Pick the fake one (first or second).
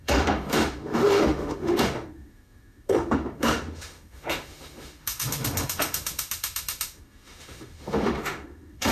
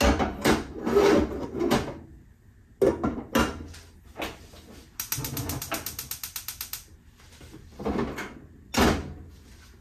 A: first